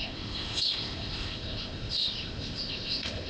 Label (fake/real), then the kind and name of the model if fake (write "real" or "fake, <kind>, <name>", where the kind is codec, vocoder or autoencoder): fake, codec, ZipCodec